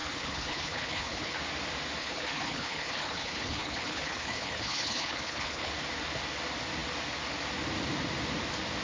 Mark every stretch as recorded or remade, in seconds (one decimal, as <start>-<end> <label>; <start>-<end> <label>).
0.0-1.4 remade; 1.4-2.0 recorded; 2.0-5.7 remade; 5.7-8.8 recorded